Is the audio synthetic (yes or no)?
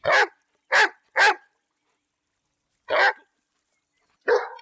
no